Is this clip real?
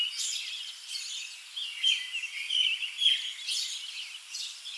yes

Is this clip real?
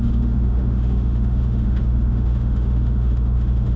no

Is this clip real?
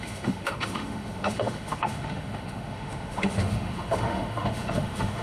no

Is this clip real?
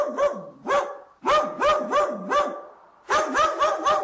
yes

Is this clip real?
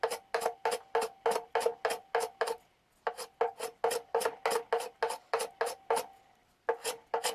yes